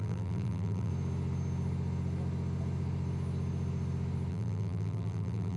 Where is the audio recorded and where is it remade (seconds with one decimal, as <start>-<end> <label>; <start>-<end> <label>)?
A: 0.0-0.9 remade; 0.9-4.3 recorded; 4.3-5.6 remade